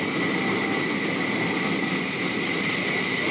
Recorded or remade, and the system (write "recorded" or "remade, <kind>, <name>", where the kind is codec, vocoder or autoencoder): recorded